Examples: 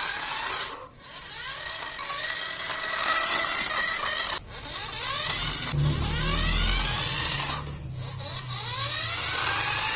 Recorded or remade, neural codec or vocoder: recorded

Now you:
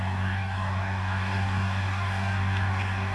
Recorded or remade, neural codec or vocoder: remade, codec, DAC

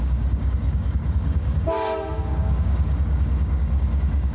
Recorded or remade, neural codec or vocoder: remade, codec, DAC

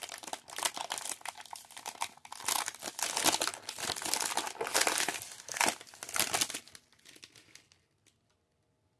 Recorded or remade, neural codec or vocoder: recorded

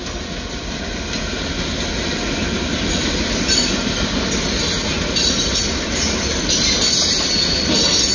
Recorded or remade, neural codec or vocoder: recorded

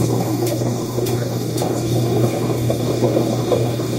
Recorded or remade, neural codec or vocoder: remade, codec, DAC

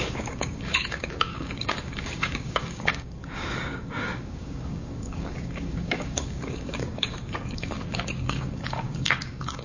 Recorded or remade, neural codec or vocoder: remade, codec, DAC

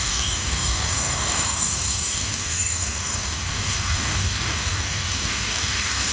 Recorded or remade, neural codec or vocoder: remade, codec, DAC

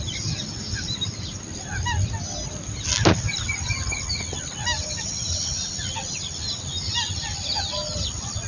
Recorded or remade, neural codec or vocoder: recorded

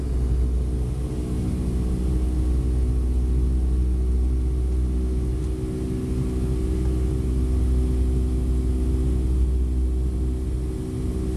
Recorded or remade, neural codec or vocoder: recorded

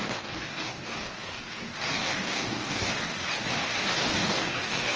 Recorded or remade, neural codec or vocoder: remade, codec, DAC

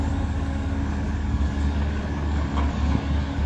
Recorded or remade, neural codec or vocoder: remade, codec, DAC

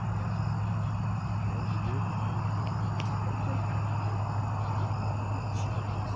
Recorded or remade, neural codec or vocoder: recorded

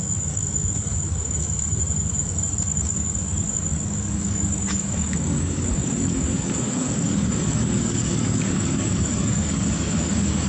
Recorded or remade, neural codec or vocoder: remade, codec, DAC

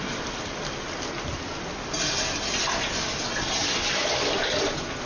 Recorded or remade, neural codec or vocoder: recorded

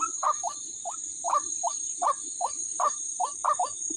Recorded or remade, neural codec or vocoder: recorded